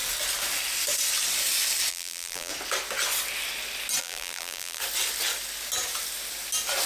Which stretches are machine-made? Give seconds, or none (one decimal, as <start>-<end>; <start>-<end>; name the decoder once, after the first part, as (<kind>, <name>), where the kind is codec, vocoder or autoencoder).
1.9-2.5 (vocoder, BigVGAN v2); 4.0-4.8